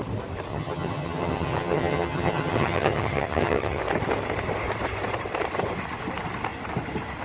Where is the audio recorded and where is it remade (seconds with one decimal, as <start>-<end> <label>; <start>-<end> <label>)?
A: 0.0-0.5 recorded; 0.5-3.8 remade; 3.8-7.2 recorded